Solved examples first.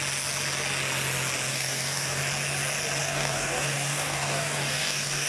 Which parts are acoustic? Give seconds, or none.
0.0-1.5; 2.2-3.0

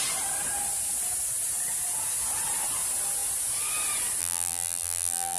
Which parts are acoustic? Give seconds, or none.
0.0-4.2

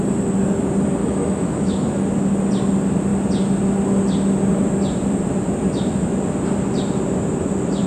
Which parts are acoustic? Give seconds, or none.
0.0-1.0; 2.0-7.9

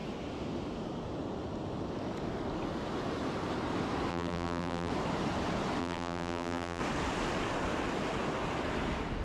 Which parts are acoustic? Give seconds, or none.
0.0-4.1; 4.9-5.8; 6.8-9.2